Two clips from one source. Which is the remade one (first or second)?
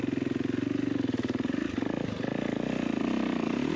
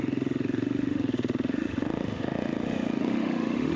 second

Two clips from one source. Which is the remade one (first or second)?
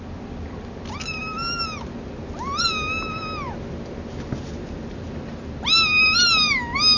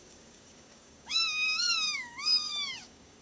second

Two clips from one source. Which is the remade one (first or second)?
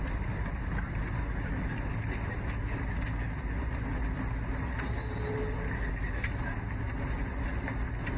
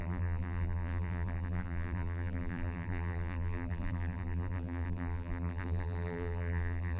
second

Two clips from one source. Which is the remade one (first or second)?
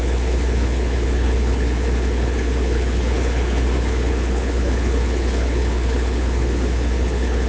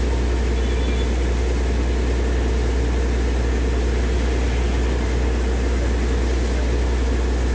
first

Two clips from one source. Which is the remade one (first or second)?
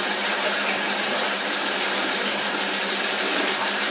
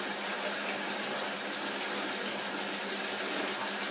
first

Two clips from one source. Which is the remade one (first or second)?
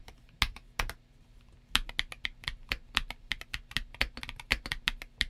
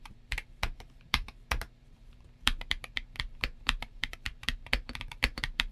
second